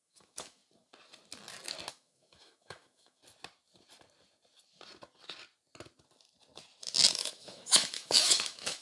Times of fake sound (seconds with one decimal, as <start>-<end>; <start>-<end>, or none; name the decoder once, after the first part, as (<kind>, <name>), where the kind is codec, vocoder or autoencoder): 0.0-0.6 (autoencoder, DAC-VAE); 1.9-3.2; 7.1-8.8